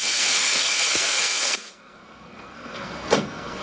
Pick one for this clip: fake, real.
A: fake